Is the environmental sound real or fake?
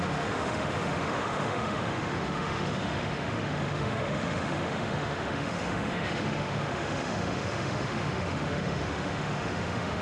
fake